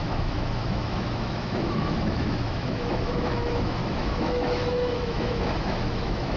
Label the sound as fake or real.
fake